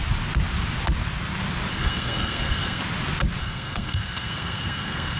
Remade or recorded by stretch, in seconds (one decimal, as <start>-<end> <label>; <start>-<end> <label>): 0.0-1.7 recorded; 1.7-2.8 remade; 2.8-3.4 recorded; 3.4-5.2 remade

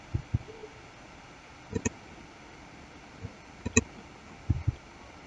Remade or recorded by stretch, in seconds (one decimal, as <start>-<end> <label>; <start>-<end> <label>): 0.0-5.3 recorded

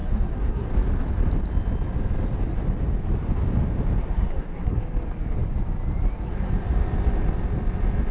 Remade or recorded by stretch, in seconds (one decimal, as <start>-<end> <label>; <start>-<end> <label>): 0.0-0.7 remade; 0.7-4.0 recorded; 4.0-4.8 remade; 4.8-8.1 recorded

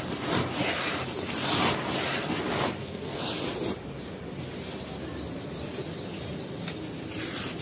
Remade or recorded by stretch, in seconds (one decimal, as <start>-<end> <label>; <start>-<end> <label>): 0.0-2.8 recorded; 2.8-3.3 remade; 3.3-7.6 recorded

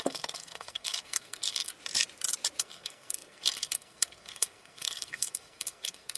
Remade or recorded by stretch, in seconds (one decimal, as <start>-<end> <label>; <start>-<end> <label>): 0.0-1.7 remade; 1.7-2.6 recorded; 2.6-6.2 remade

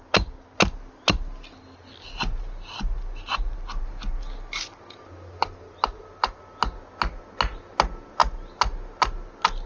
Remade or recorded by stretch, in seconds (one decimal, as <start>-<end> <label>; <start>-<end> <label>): 0.0-9.7 recorded

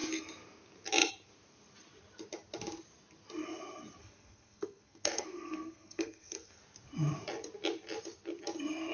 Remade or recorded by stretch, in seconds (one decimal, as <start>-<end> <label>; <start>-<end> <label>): 0.0-4.0 recorded; 4.0-6.6 remade; 6.6-8.9 recorded

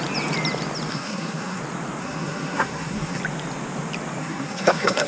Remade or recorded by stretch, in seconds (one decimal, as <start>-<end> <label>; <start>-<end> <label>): 0.0-0.9 recorded; 0.9-1.6 remade; 1.6-2.0 recorded; 2.0-3.2 remade; 3.2-4.2 recorded; 4.2-5.1 remade